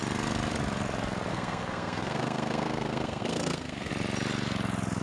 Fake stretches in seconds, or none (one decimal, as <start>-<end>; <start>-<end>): 1.3-3.9